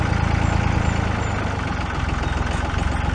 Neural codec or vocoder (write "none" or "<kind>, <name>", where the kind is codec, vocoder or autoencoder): none